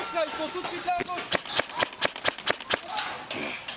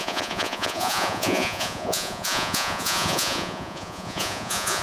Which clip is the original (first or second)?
first